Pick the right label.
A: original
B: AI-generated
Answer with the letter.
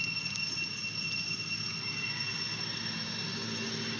A